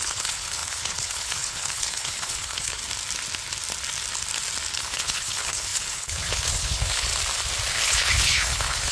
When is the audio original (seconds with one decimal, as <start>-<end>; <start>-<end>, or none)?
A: 2.8-4.8; 7.1-7.7